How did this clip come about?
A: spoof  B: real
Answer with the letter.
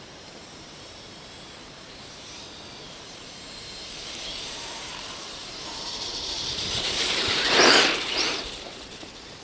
A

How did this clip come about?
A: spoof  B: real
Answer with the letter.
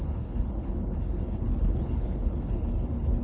A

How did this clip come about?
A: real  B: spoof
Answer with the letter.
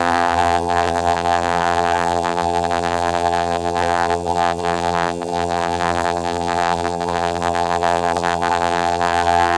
B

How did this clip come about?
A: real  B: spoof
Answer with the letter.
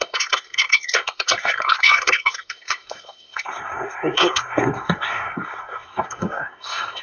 B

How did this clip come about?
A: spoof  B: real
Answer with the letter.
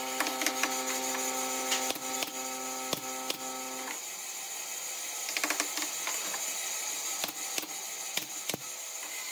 B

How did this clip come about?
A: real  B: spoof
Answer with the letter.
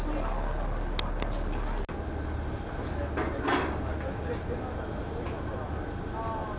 A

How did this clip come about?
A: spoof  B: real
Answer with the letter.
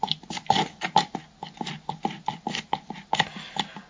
B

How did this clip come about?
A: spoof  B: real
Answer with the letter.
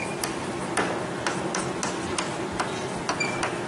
B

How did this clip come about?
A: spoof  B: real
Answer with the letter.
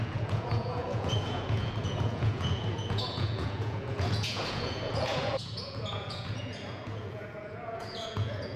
A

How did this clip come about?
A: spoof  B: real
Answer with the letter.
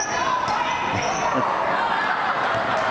B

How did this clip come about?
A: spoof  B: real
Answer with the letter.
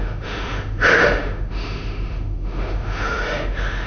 A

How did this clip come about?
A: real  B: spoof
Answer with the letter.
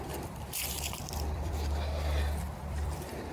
B